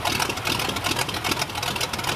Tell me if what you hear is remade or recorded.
recorded